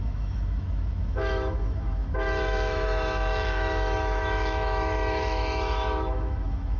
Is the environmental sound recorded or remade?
remade